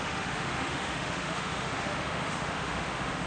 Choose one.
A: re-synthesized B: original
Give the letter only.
A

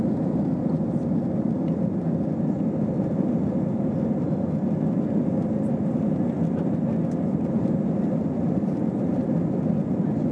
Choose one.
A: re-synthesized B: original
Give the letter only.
B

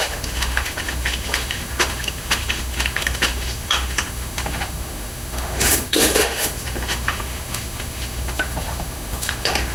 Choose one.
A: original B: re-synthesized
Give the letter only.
B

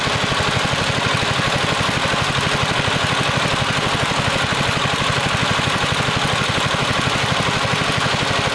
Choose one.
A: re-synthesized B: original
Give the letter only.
B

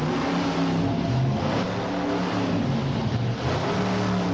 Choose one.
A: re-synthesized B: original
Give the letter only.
B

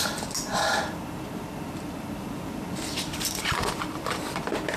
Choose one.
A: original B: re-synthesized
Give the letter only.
A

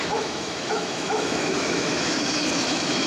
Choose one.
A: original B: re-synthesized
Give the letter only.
B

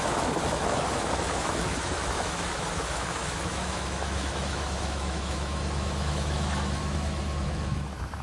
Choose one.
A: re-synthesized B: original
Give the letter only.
A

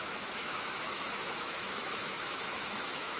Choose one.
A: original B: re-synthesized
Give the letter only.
B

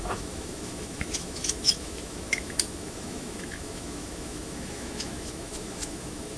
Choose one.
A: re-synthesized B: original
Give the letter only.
A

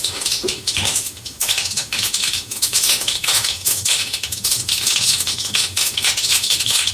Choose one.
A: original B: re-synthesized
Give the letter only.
B